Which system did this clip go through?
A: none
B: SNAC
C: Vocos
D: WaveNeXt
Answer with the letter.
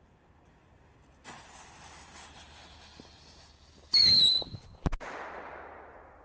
A